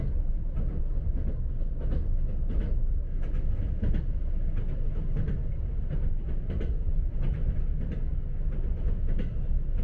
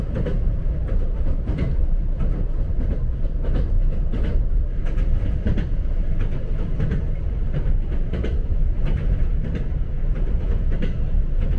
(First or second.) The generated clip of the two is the second